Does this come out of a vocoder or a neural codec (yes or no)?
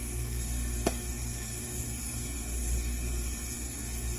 yes